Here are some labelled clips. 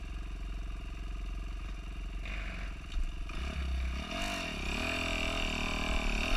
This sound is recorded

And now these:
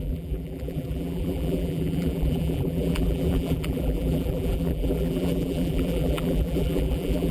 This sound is remade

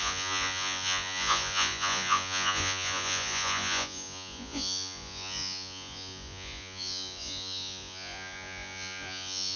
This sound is remade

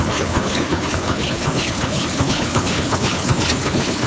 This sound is remade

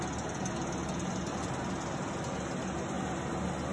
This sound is recorded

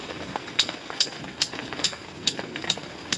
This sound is remade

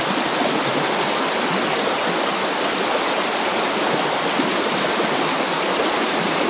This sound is recorded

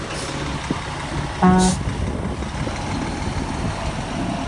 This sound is recorded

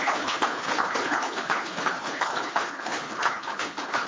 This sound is remade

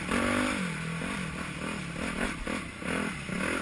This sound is recorded